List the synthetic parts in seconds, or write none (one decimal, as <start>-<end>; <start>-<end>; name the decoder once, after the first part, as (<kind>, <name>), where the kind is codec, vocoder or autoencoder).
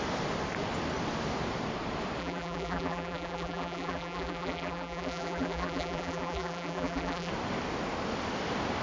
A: 2.2-7.3 (vocoder, BigVGAN v2)